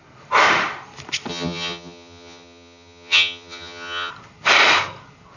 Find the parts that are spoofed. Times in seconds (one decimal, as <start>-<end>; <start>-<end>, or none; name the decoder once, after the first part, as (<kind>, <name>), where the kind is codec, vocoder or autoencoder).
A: 1.3-4.1 (vocoder, HiFi-GAN)